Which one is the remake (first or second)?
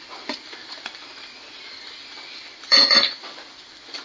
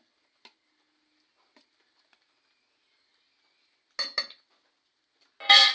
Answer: first